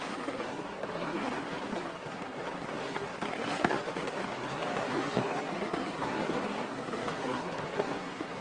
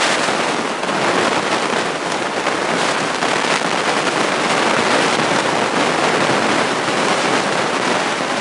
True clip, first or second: second